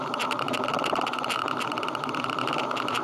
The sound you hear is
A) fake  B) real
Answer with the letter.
A